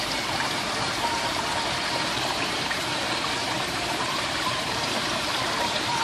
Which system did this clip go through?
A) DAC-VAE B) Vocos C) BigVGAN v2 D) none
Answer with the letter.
C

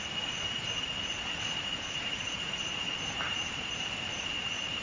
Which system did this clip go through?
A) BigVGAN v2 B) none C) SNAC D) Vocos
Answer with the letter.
A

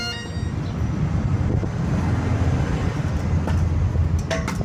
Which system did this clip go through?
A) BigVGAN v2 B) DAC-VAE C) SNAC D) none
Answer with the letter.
D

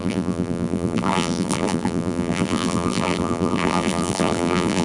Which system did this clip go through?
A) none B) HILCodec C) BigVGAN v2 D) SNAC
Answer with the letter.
C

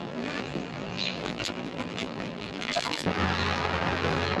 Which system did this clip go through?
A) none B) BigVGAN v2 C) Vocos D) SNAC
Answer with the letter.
B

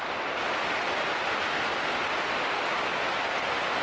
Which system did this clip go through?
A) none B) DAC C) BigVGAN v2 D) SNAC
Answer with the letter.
A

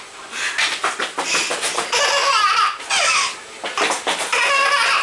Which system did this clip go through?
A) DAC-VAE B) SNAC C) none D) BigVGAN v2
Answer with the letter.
C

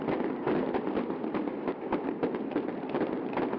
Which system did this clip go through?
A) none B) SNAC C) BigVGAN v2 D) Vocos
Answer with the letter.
A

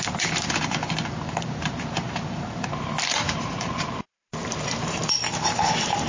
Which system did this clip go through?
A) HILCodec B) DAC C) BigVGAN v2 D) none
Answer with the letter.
C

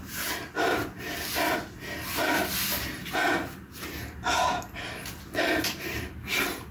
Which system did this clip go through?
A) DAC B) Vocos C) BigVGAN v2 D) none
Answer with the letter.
D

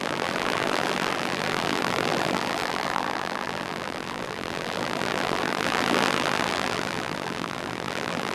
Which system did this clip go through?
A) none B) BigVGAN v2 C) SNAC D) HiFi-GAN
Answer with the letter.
B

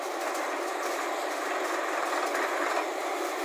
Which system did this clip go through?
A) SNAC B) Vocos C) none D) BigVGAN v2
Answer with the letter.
C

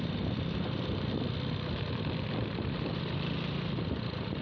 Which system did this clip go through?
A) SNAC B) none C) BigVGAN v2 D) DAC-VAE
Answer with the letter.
C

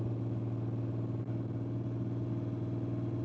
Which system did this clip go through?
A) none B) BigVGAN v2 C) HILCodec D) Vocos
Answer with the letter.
A